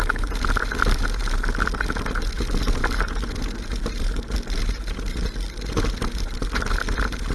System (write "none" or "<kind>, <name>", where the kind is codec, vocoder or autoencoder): none